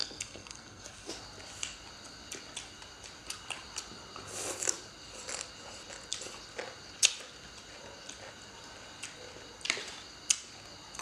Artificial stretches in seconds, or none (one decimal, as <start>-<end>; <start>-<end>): 0.0-1.1